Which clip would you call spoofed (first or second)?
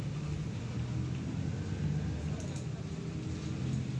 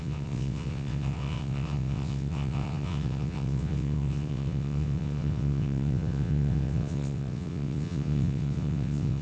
second